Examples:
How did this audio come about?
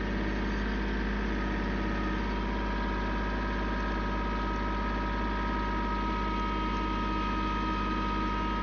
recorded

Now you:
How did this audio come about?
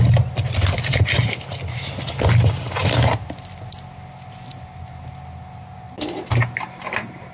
recorded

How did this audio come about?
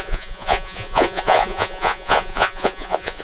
remade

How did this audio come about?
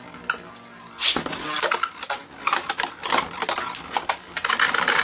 recorded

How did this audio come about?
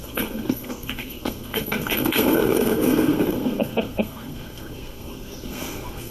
remade